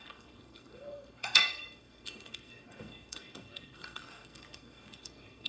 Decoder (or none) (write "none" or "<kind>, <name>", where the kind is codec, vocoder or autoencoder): codec, SNAC